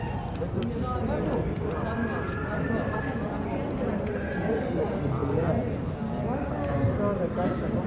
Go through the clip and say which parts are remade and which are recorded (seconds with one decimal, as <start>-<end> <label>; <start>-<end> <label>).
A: 0.0-7.9 recorded